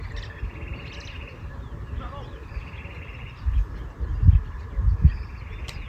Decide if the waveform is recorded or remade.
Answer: recorded